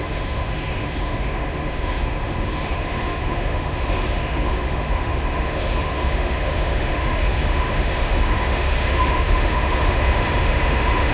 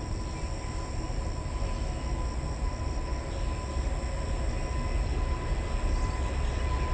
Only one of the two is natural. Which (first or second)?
second